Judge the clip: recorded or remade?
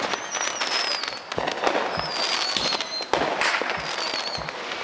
recorded